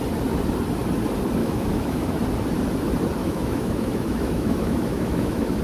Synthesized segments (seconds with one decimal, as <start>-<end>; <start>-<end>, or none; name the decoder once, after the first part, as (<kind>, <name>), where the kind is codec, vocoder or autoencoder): 1.4-2.2 (autoencoder, DAC-VAE); 3.2-5.6